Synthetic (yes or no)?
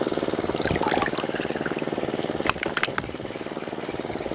no